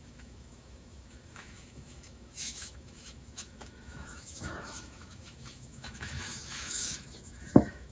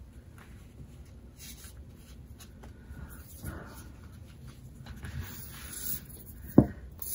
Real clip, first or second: second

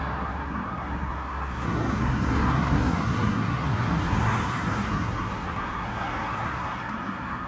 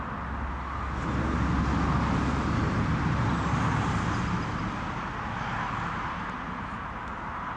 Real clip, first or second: second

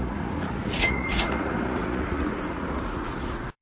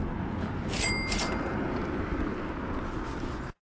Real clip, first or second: second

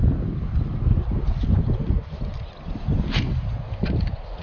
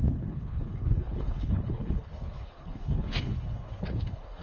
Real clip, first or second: first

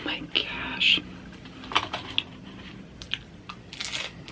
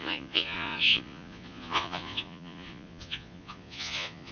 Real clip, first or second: first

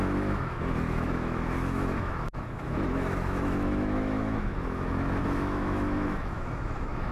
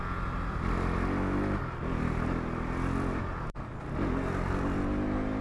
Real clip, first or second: second